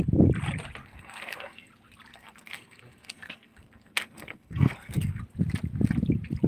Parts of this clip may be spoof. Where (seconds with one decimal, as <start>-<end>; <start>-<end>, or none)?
0.8-1.7; 2.1-5.2